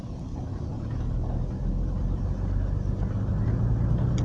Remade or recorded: recorded